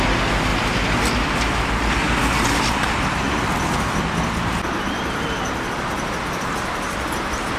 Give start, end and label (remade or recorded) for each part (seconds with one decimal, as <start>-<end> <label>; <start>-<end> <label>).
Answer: 0.0-7.6 recorded